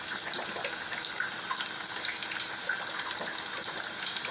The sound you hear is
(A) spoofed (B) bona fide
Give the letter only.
B